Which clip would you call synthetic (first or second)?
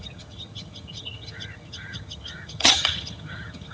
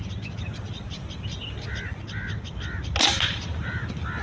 first